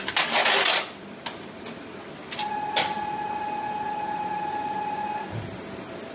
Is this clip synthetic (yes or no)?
no